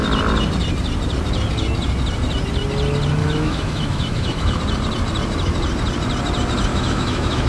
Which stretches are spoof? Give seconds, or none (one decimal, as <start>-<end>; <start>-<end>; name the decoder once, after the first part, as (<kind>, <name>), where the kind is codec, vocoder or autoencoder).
3.2-4.6 (autoencoder, DAC-VAE); 6.7-7.5